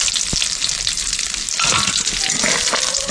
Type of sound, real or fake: real